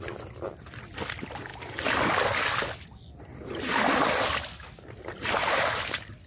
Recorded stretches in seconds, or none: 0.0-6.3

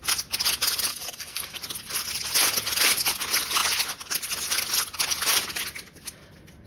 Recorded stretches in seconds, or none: 0.0-0.9; 1.6-6.7

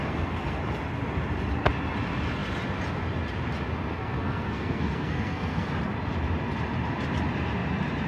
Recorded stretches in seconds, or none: 0.6-3.9; 5.7-8.1

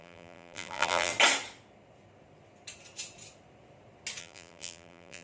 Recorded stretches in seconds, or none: 1.1-4.2

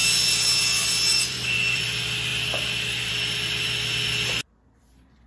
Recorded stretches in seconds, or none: 0.0-1.1; 1.8-5.3

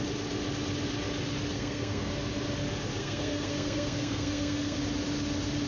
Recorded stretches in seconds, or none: 0.0-1.5; 2.1-3.0; 4.8-5.7